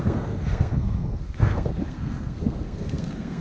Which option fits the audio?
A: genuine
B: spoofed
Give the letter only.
B